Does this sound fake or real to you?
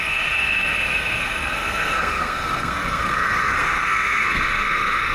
fake